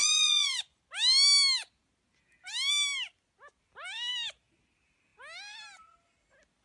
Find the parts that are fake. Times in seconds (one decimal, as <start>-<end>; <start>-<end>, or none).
0.0-0.8